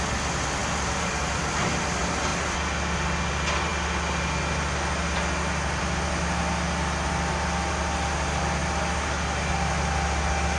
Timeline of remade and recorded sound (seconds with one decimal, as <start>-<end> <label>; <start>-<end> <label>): 0.0-10.6 recorded